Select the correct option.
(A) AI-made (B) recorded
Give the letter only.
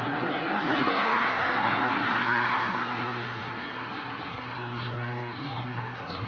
A